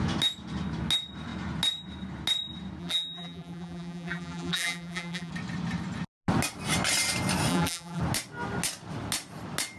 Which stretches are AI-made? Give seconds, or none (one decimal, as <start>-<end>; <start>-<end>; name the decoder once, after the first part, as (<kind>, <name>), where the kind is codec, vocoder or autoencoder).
2.8-5.3 (vocoder, BigVGAN v2); 7.5-8.0

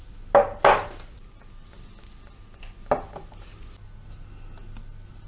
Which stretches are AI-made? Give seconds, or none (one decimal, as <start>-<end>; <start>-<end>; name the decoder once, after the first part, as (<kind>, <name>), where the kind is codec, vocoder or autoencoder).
none

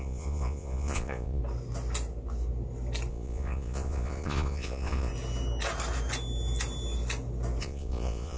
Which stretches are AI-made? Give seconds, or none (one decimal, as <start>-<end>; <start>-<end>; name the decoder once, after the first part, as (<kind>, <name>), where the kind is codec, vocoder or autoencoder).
0.0-1.4 (vocoder, Vocos); 3.1-5.1; 7.6-8.4

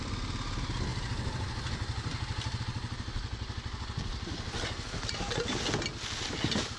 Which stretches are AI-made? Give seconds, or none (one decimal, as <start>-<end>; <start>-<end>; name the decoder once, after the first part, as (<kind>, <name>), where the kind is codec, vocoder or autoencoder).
none

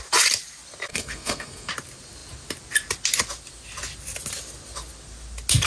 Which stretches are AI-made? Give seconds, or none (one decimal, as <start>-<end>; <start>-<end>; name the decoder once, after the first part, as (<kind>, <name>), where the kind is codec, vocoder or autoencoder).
0.9-1.7 (codec, SNAC)